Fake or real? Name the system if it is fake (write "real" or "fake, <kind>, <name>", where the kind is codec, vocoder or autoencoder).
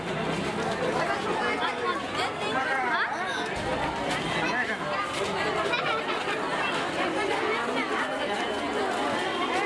real